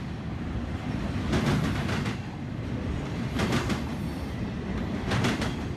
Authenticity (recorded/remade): recorded